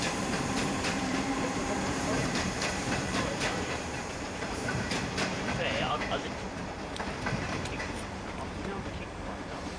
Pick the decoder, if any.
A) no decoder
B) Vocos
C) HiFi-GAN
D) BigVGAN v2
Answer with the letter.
D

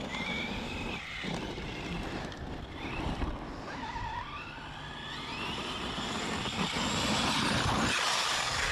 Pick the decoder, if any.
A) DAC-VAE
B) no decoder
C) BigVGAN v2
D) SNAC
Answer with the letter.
B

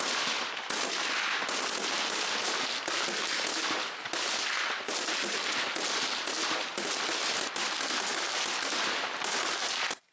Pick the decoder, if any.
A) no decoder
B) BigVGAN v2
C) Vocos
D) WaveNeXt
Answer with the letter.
A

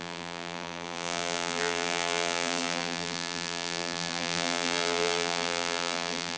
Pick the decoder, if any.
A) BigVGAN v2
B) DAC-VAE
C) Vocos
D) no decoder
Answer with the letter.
A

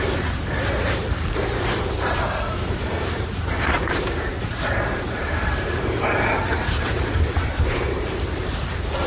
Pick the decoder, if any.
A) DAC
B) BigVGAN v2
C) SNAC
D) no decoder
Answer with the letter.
B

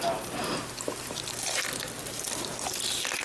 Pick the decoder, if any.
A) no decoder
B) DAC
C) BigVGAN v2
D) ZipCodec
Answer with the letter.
A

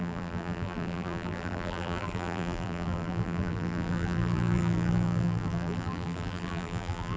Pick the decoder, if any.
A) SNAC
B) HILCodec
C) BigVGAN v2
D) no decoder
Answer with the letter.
C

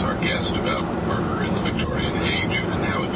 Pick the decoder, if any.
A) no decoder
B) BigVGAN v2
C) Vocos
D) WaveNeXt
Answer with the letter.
A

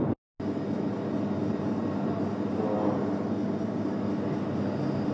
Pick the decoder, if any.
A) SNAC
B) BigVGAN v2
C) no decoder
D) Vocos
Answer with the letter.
C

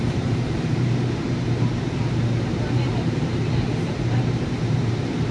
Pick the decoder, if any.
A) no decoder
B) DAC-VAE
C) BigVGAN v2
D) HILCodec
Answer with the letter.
C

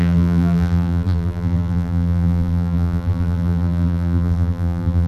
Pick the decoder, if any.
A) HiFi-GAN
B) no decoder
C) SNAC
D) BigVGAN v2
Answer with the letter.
D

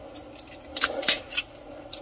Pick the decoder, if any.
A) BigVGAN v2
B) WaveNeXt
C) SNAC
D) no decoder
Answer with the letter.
A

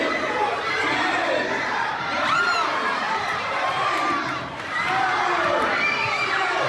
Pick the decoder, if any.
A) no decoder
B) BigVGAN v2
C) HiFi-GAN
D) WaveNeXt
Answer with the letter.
B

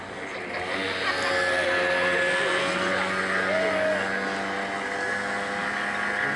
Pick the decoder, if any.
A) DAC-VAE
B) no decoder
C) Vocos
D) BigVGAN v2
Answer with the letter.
B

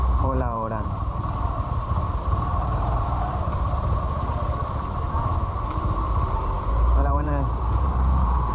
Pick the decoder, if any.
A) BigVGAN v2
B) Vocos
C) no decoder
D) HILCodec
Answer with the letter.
A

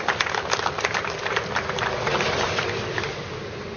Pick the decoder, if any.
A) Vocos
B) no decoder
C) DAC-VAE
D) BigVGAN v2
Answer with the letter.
B